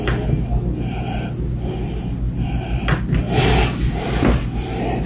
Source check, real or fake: real